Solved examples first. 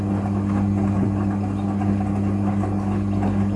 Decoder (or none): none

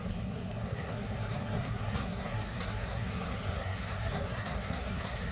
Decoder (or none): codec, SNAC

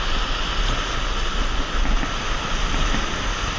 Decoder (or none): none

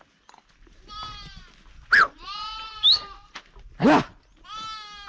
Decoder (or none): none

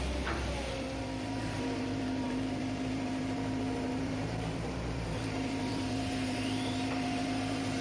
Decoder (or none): vocoder, BigVGAN v2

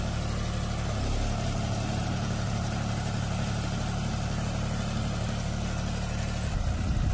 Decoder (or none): none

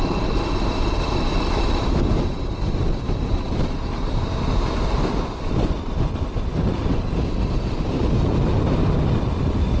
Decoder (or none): none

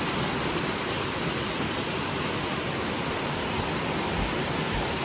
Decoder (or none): none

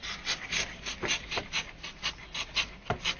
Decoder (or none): none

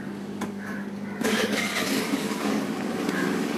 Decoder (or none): codec, DAC